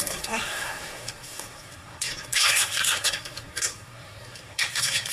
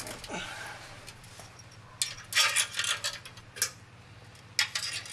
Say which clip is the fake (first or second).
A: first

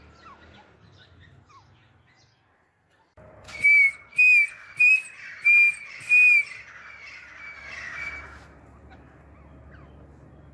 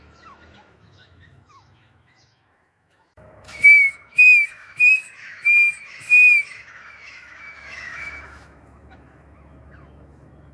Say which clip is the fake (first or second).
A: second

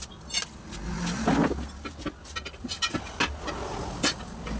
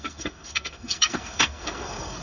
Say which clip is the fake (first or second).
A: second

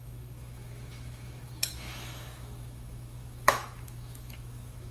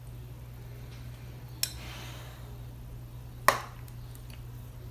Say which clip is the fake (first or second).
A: first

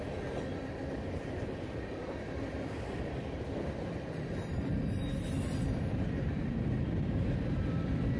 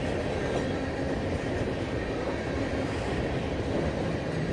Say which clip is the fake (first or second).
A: first